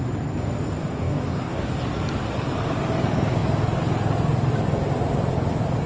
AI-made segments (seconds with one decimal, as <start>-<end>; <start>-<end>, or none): 0.8-1.7